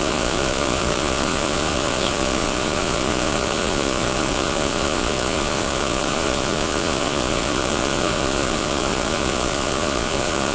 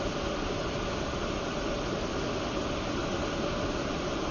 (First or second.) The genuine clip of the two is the second